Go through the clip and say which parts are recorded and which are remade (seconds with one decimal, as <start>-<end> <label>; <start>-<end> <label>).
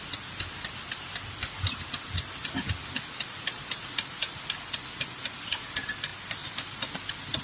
0.0-7.4 recorded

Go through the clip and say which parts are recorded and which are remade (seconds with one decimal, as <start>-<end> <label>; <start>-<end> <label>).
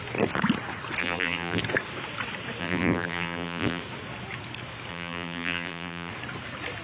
0.0-1.0 recorded; 1.0-1.6 remade; 1.6-2.6 recorded; 2.6-3.8 remade; 3.8-4.9 recorded; 4.9-6.1 remade; 6.1-6.8 recorded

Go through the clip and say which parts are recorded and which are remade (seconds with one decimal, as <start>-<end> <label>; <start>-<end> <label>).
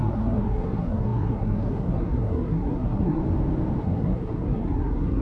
0.0-3.2 remade; 3.2-3.8 recorded; 3.8-5.2 remade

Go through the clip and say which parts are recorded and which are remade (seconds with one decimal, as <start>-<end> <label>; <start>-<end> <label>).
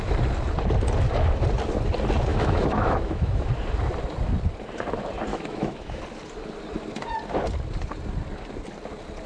0.0-2.3 recorded; 2.3-3.5 remade; 3.5-5.3 recorded; 5.3-6.0 remade; 6.0-9.3 recorded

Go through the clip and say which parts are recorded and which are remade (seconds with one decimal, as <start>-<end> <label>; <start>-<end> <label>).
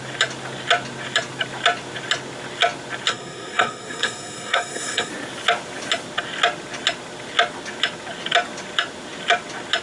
0.0-3.1 recorded; 3.1-5.1 remade; 5.1-9.8 recorded